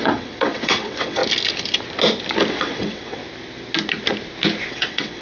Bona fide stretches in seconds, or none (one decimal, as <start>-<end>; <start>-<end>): 1.2-2.5; 3.2-4.7